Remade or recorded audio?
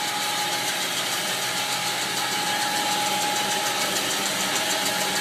recorded